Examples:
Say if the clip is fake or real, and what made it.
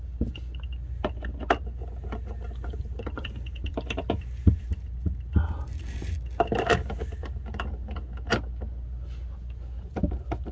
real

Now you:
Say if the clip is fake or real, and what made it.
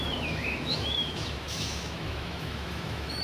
fake, autoencoder, DAC-VAE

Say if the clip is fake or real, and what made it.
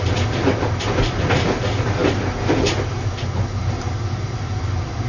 real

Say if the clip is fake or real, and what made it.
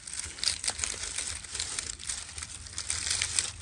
real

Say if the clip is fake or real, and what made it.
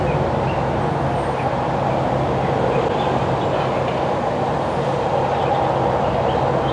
real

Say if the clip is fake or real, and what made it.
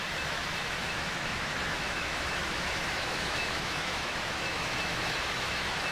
fake, autoencoder, DAC-VAE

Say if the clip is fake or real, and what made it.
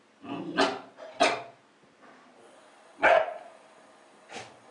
real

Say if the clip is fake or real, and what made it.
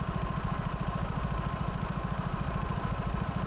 real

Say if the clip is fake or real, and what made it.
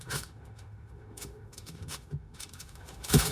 fake, autoencoder, DAC-VAE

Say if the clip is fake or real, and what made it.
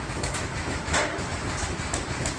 fake, autoencoder, DAC-VAE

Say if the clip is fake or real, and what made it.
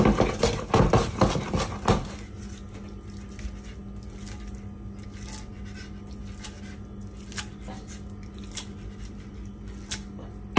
real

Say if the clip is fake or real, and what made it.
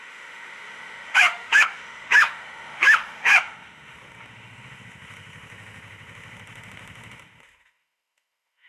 fake, autoencoder, DAC-VAE